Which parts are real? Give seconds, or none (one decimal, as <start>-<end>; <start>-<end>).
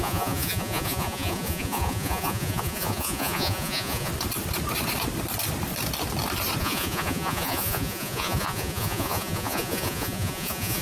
4.1-6.6